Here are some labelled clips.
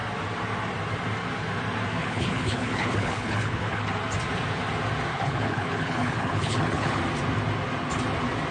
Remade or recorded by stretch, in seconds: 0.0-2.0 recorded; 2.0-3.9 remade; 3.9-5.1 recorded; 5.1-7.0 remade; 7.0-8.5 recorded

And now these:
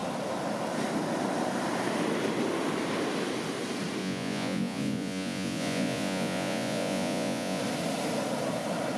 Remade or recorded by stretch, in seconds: 0.0-4.0 recorded; 4.0-7.6 remade; 7.6-9.0 recorded

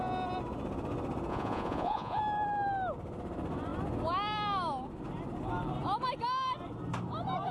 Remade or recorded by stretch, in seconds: 0.0-1.3 recorded; 1.3-2.2 remade; 2.2-7.5 recorded

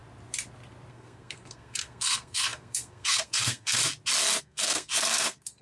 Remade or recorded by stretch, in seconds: 0.0-0.9 recorded; 0.9-3.8 remade; 3.8-4.4 recorded; 4.4-5.6 remade